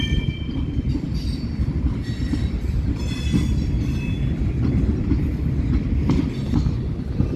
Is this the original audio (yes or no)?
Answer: yes